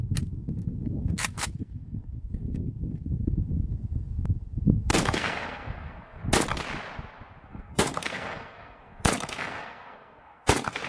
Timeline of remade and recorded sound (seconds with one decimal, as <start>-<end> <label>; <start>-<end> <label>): 0.0-6.2 remade; 6.2-7.5 recorded; 7.5-10.9 remade